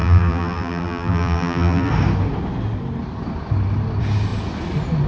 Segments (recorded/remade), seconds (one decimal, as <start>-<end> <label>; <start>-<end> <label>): 0.0-1.9 remade; 1.9-5.1 recorded